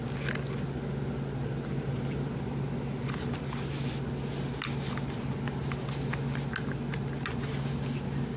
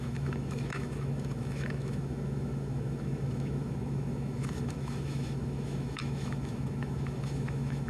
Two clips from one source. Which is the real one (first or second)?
first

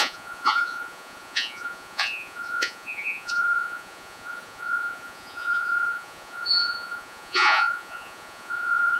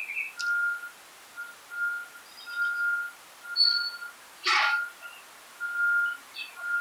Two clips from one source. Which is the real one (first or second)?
second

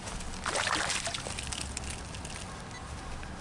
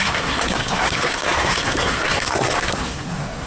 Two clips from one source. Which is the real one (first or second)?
first